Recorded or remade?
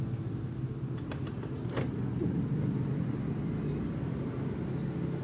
recorded